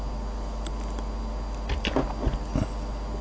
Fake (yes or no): no